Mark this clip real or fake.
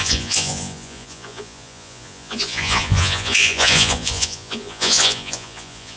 fake